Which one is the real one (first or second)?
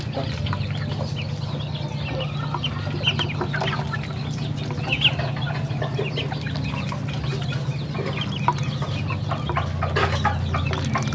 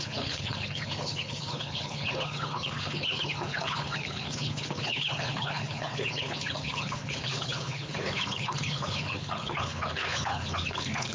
first